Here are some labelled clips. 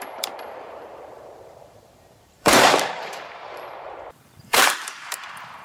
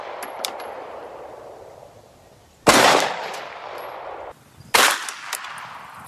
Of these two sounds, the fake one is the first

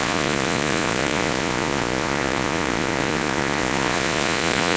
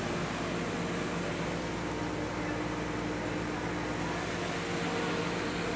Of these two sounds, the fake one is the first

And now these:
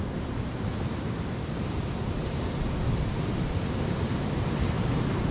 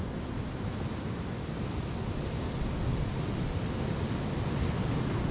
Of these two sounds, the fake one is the first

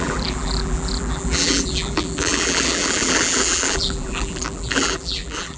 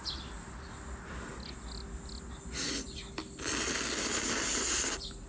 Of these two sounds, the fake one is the first